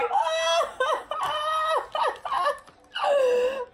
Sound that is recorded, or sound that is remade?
recorded